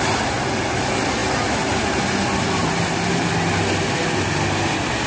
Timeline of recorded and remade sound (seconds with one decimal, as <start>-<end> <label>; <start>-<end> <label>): 0.0-5.1 recorded